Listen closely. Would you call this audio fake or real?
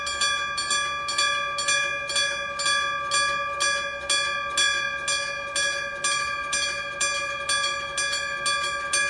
real